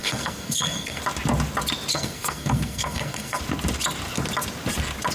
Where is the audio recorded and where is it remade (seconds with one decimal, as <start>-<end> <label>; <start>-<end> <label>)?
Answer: 0.0-1.0 remade; 1.0-1.9 recorded; 1.9-3.4 remade; 3.4-5.1 recorded